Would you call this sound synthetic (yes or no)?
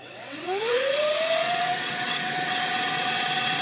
yes